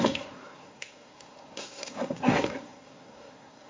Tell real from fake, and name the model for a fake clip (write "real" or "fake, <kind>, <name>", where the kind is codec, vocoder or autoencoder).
fake, codec, SNAC